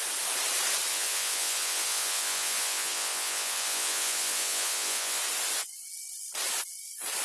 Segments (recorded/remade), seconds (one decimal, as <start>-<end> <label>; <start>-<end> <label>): 0.0-0.9 recorded; 0.9-5.2 remade; 5.2-7.2 recorded